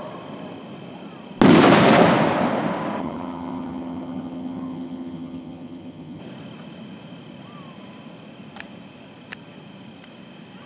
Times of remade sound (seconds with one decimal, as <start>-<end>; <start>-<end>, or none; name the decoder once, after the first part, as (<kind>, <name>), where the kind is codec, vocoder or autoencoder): 3.0-6.2 (vocoder, HiFi-GAN)